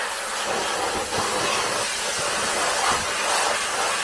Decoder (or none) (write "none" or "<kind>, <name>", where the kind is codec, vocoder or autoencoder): none